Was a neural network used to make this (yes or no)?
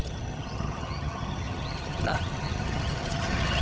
yes